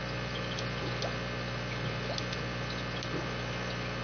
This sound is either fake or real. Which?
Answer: real